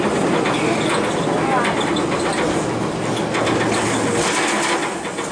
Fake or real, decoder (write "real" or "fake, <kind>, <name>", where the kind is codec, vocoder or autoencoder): real